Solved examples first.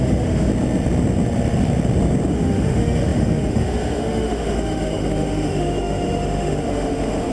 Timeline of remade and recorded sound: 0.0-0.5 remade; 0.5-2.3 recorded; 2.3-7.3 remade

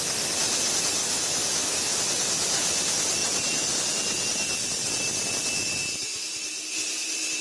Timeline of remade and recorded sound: 0.0-1.0 recorded; 1.0-2.0 remade; 2.0-7.4 recorded